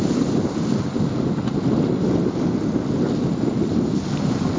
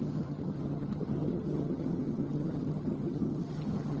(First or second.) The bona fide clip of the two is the first